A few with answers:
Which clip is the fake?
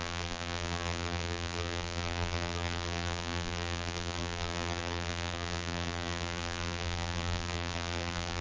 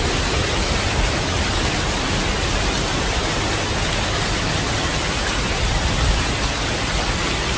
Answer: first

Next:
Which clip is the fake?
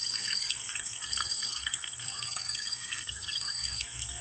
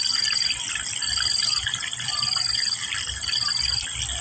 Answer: first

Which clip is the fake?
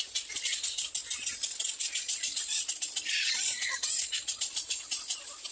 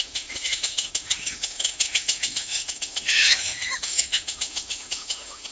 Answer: second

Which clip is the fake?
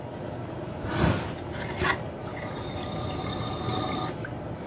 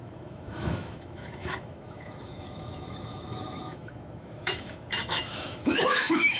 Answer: second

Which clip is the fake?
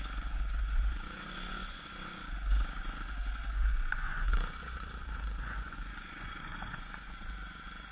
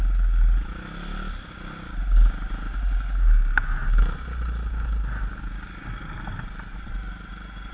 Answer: first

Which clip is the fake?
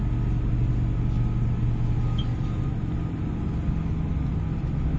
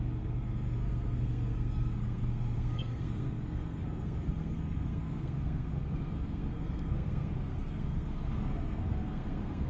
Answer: second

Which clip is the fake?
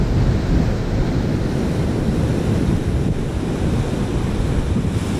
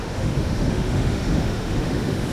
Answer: second